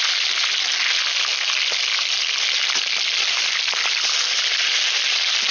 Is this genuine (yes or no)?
yes